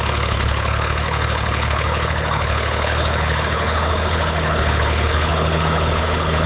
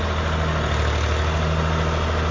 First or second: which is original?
second